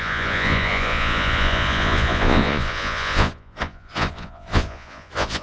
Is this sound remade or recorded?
remade